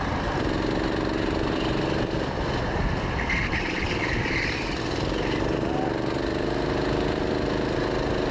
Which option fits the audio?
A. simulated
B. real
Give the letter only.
B